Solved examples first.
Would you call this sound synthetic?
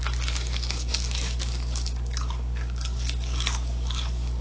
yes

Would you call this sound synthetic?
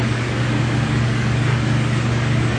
yes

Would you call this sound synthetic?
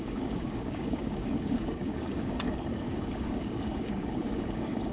yes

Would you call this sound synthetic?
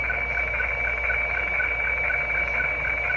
no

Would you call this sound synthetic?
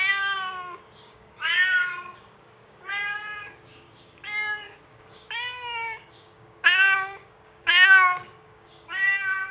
yes